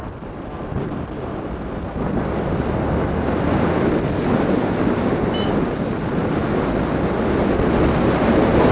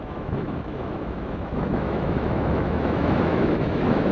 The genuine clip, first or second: first